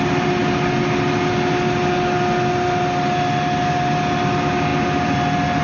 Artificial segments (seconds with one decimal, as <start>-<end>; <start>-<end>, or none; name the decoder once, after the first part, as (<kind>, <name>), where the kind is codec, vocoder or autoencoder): none